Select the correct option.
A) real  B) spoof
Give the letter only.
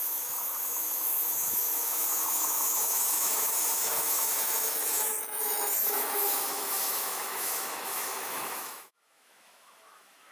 B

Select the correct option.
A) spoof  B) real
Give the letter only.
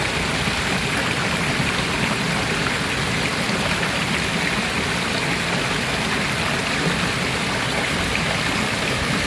B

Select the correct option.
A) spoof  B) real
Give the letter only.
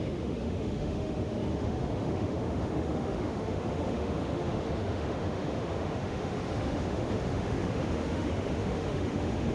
A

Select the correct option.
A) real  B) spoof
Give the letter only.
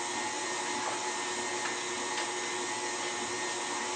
A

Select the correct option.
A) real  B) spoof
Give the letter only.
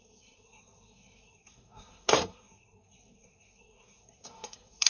B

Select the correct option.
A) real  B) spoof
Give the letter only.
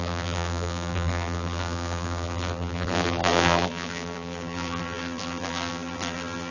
B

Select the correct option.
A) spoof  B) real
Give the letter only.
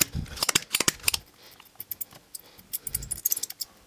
A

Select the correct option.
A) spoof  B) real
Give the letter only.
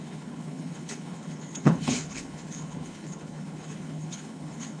A